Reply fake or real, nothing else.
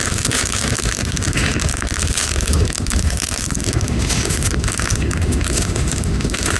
fake